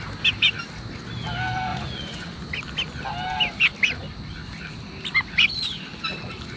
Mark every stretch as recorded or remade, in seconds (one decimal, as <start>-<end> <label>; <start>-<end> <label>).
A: 0.0-1.7 recorded; 1.7-2.4 remade; 2.4-6.6 recorded